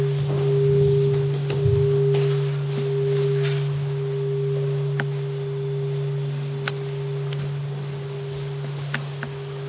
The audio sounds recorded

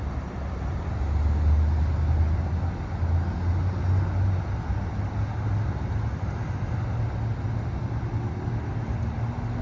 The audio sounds recorded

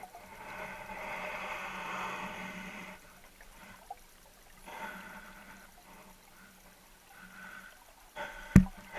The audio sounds recorded